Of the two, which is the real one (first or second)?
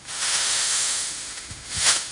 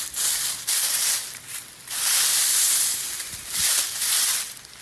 second